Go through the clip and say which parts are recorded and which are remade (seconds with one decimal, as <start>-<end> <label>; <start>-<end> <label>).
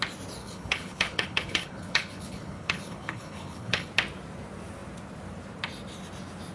0.0-0.4 recorded; 0.4-3.9 remade; 3.9-6.5 recorded